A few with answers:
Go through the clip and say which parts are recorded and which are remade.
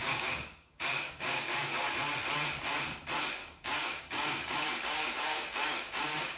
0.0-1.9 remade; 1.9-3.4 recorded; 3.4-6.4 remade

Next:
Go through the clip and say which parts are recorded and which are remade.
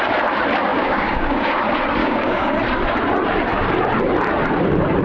0.0-0.7 recorded; 0.7-1.6 remade; 1.6-2.0 recorded; 2.0-2.6 remade; 2.6-5.0 recorded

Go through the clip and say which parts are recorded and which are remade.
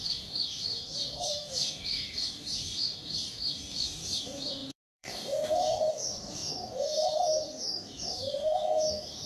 0.0-9.3 remade